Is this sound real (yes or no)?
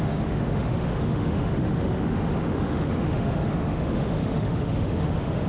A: no